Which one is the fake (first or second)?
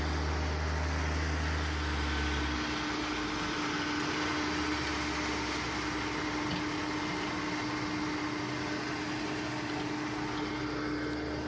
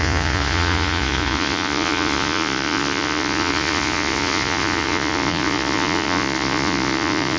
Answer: second